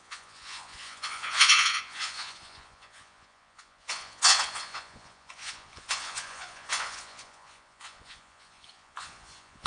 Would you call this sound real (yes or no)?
no